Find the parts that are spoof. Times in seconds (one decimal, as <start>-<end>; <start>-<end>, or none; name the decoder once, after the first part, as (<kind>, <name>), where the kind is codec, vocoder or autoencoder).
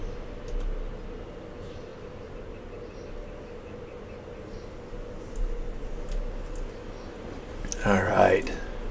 none